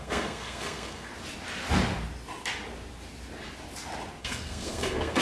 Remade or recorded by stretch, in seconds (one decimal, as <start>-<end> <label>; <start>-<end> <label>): 0.0-1.1 remade; 1.1-4.2 recorded; 4.2-5.2 remade